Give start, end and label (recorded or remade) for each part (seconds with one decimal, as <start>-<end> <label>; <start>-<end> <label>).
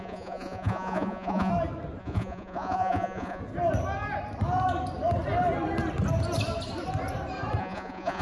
0.0-1.5 remade; 1.5-2.0 recorded; 2.0-3.4 remade; 3.4-7.6 recorded; 7.6-8.2 remade